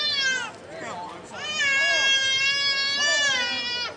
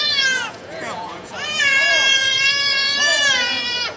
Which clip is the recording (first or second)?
first